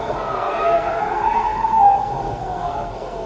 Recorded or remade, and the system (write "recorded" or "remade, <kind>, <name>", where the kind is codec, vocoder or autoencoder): remade, codec, SNAC